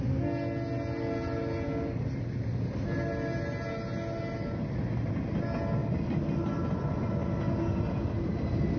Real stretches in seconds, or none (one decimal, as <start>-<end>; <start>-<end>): 0.0-8.8